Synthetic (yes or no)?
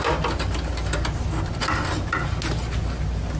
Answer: no